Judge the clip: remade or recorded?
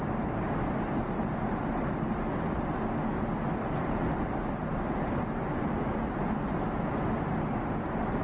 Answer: recorded